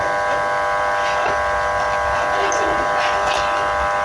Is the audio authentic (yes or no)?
yes